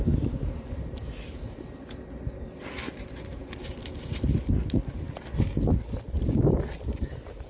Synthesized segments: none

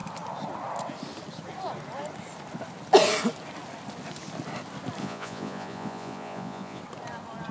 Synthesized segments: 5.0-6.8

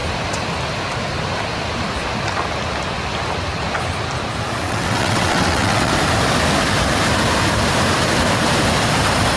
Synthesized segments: 4.6-5.9